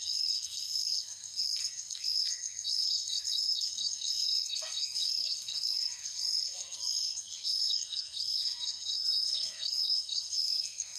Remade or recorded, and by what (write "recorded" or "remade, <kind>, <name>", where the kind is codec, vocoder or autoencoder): remade, codec, SNAC